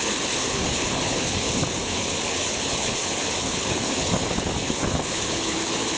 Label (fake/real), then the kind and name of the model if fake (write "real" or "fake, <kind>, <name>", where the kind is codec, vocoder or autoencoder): fake, codec, HILCodec